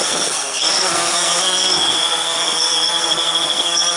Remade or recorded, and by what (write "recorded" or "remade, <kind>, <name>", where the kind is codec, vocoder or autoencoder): remade, codec, SNAC